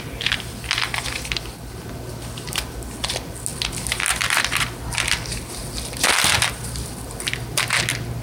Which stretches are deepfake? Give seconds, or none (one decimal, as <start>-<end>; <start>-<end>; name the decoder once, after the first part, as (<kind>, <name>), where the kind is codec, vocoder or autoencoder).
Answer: none